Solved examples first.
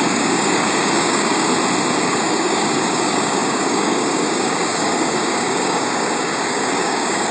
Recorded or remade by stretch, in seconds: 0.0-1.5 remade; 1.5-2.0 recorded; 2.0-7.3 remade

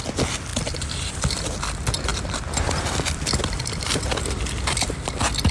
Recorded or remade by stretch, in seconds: 0.0-0.5 recorded; 0.5-1.6 remade; 1.6-2.1 recorded; 2.1-5.1 remade; 5.1-5.5 recorded

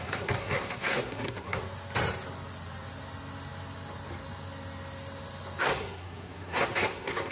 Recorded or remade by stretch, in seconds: 0.0-1.6 remade; 1.6-5.6 recorded; 5.6-7.3 remade

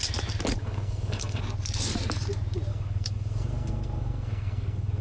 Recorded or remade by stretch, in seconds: 0.0-0.6 recorded; 0.6-1.4 remade; 1.4-2.7 recorded; 2.7-5.0 remade

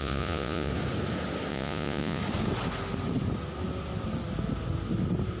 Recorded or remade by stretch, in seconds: 0.0-0.7 remade; 0.7-1.5 recorded; 1.5-2.2 remade; 2.2-5.4 recorded

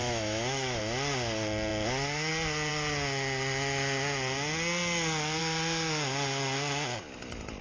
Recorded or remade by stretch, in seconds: 0.0-0.8 remade; 0.8-7.6 recorded

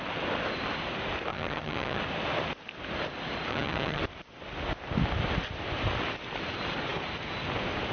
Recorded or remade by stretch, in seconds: 0.0-1.3 recorded; 1.3-2.0 remade; 2.0-3.5 recorded; 3.5-4.0 remade; 4.0-7.9 recorded